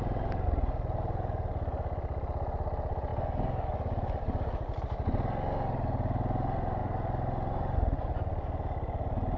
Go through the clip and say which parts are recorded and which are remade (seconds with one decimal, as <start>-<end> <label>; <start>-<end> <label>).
0.0-9.4 recorded